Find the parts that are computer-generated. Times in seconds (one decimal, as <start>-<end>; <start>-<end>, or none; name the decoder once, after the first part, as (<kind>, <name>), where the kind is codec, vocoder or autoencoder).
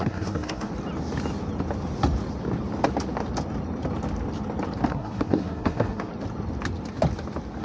0.0-0.7 (codec, SNAC); 4.9-6.1